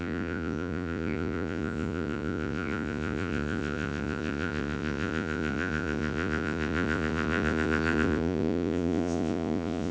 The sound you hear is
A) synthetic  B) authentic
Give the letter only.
A